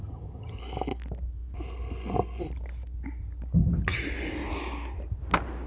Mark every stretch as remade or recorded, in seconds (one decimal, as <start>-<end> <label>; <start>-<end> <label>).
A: 0.0-0.6 remade; 0.6-5.7 recorded